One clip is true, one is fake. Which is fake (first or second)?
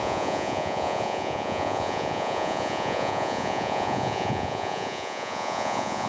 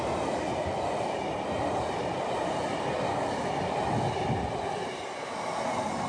first